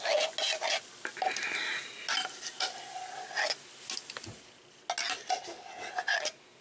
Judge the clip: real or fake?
real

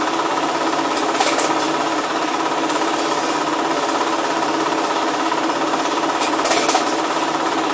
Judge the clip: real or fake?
real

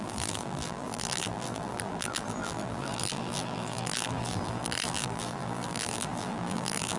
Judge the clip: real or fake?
fake